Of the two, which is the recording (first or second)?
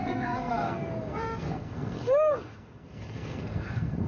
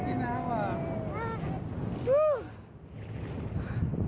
second